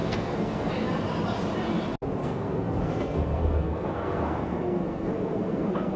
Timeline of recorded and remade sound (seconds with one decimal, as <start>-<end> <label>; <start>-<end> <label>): 0.0-0.7 remade; 0.7-2.2 recorded; 2.2-6.0 remade